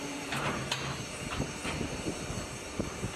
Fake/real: fake